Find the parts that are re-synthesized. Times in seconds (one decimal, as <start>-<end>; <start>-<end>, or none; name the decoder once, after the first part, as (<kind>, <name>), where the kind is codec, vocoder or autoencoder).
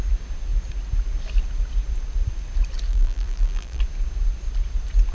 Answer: 2.9-3.8 (vocoder, BigVGAN v2)